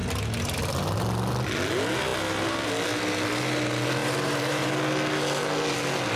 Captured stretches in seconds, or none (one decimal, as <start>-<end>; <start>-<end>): 0.0-4.0; 4.7-6.2